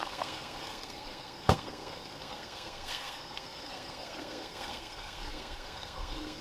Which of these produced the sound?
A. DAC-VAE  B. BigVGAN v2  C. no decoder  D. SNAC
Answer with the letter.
D